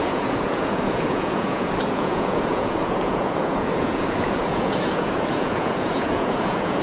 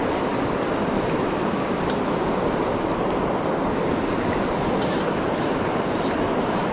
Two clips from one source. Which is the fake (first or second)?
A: first